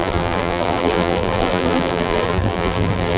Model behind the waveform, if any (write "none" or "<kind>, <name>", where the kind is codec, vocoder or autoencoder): vocoder, BigVGAN v2